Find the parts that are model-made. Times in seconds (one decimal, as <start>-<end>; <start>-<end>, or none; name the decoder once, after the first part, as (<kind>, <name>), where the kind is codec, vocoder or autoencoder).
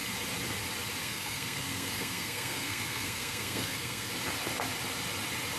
1.0-4.1 (codec, SNAC)